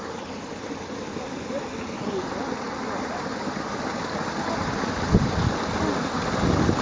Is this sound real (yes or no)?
yes